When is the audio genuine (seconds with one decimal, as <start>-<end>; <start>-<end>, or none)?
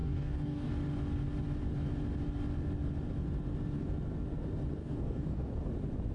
0.7-4.8; 5.5-6.1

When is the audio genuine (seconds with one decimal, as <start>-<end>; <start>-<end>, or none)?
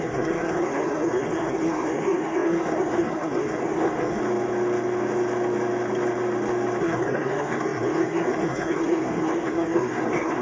4.2-6.8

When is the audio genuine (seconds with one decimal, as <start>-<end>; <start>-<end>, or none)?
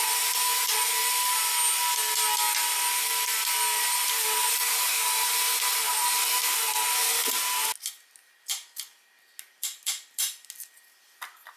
0.0-11.6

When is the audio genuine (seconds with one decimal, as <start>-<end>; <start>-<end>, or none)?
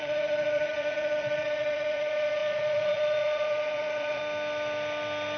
4.2-5.4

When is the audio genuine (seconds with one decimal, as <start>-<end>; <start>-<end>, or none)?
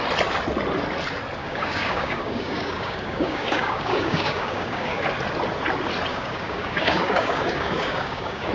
0.0-1.4; 5.0-6.1